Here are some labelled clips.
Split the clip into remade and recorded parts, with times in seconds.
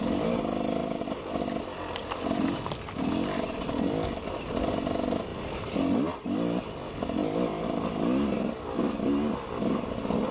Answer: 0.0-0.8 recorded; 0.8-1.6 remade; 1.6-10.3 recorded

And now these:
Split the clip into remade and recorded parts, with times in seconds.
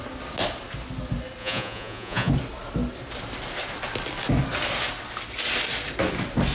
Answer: 0.0-1.4 recorded; 1.4-2.3 remade; 2.3-6.5 recorded